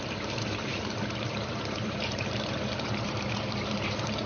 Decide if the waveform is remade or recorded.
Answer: remade